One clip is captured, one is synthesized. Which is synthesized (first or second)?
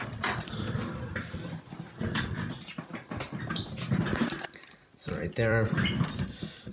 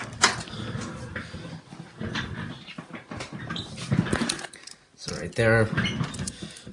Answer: first